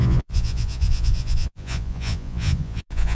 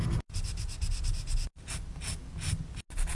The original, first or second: second